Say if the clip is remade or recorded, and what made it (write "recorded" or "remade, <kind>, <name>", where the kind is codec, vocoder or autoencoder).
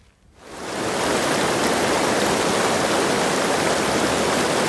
recorded